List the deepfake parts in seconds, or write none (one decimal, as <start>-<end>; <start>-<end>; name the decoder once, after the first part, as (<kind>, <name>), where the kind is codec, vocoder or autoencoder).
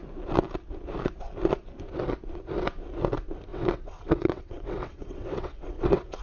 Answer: 3.5-6.2 (vocoder, WaveNeXt)